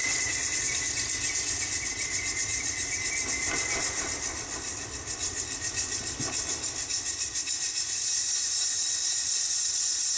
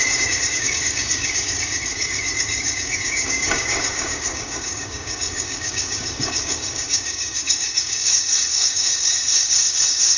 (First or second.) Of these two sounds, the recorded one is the first